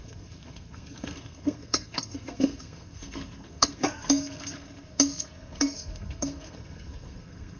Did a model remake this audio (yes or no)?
yes